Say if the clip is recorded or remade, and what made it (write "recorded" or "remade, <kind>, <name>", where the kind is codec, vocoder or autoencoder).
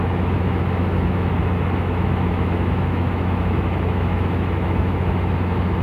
remade, autoencoder, DAC-VAE